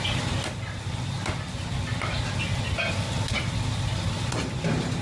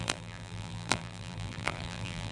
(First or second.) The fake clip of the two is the second